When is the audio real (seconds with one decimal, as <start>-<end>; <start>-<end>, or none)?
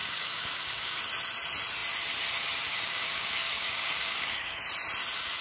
1.0-2.7; 4.6-5.4